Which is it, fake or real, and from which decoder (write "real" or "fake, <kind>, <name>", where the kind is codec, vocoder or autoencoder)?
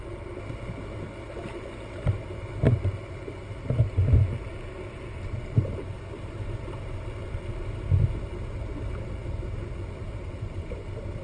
real